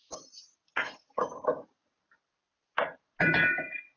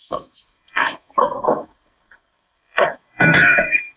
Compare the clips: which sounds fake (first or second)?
second